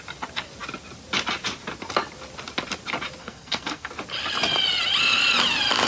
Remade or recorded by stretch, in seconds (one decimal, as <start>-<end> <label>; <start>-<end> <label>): 0.0-3.2 recorded; 3.2-3.9 remade; 3.9-5.9 recorded